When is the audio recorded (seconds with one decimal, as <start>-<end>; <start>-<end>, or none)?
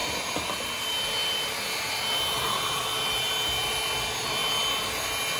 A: 0.0-5.4